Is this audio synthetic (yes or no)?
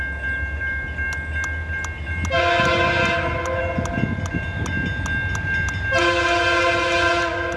no